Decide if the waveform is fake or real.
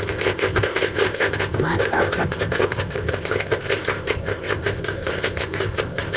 fake